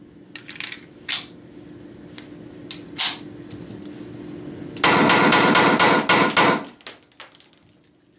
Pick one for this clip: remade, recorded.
recorded